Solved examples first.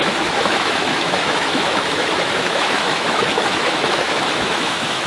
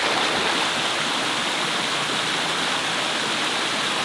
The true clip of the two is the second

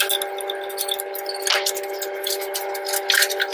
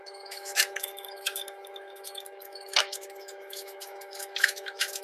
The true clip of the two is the first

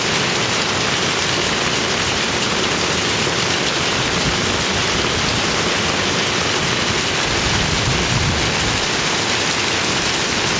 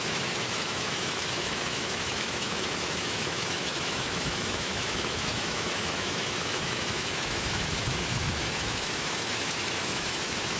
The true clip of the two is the first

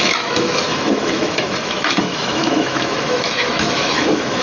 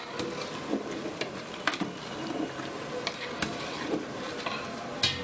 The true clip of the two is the second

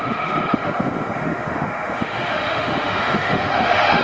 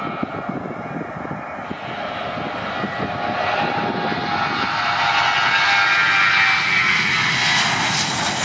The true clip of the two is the second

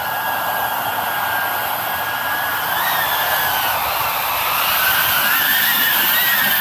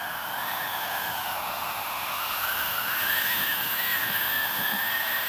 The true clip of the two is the first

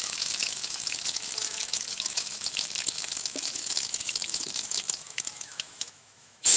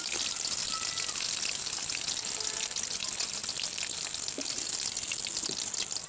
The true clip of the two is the second